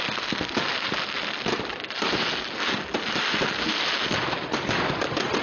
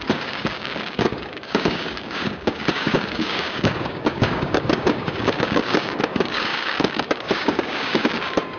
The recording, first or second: first